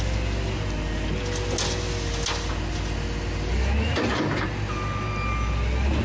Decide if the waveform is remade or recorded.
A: recorded